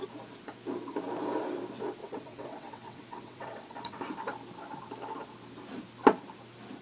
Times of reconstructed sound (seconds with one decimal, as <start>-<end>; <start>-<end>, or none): 2.0-4.0